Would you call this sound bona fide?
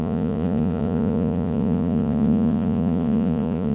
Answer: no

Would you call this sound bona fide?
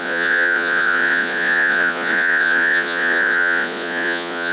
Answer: no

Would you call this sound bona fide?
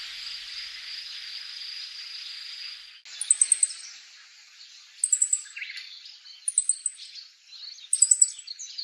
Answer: yes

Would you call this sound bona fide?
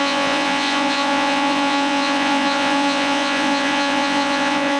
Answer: no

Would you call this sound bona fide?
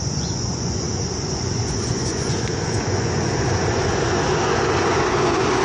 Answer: no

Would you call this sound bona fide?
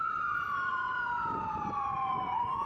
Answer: no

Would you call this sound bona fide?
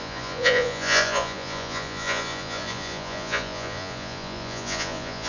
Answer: no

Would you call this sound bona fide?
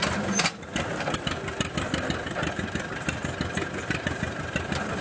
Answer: yes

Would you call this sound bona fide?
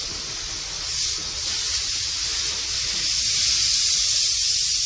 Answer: yes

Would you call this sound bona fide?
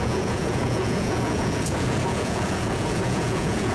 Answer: no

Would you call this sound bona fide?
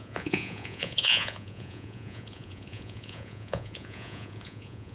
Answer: no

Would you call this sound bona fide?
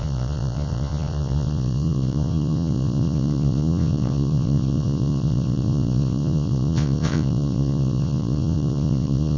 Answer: no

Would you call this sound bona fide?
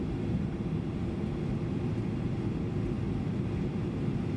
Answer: yes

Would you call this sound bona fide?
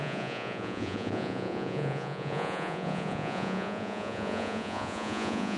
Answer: no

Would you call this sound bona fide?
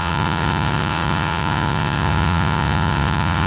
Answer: no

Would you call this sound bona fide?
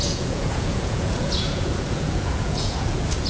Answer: no